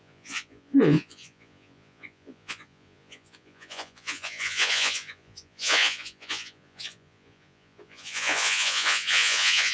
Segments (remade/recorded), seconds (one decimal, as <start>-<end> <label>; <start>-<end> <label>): 0.0-9.7 remade